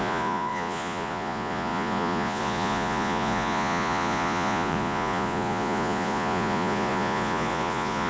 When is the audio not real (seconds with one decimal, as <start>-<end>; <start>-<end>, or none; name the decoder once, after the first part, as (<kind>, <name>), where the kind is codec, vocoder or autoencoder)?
0.0-8.1 (vocoder, Vocos)